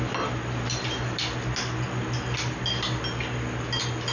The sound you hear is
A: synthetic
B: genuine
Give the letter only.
B